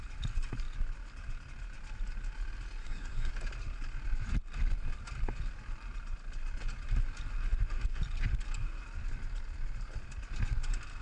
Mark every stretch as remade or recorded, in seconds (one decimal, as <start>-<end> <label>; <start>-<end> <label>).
0.0-2.8 recorded; 2.8-3.3 remade; 3.3-11.0 recorded

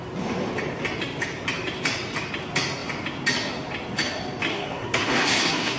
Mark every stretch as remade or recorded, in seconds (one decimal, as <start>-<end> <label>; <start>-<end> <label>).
0.0-4.5 recorded; 4.5-5.8 remade

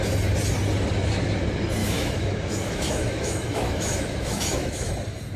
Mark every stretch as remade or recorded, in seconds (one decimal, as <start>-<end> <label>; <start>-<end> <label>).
0.0-1.8 recorded; 1.8-4.9 remade; 4.9-5.4 recorded